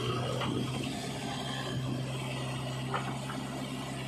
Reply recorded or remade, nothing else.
recorded